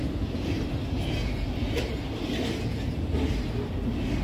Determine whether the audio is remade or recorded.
recorded